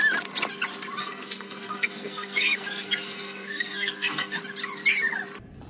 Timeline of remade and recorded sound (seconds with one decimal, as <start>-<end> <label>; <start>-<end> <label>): 0.0-1.0 recorded; 1.0-4.4 remade; 4.4-5.7 recorded